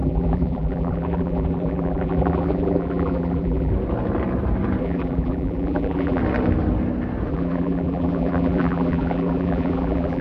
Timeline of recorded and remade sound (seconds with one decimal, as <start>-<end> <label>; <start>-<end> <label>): 0.0-3.7 remade; 3.7-4.8 recorded; 4.8-6.2 remade; 6.2-7.3 recorded; 7.3-10.2 remade